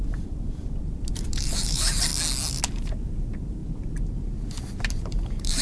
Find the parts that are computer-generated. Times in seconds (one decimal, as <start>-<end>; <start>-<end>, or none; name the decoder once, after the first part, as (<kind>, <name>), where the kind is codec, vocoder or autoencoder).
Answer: 0.0-2.1 (vocoder, BigVGAN v2); 2.6-3.6; 4.6-5.6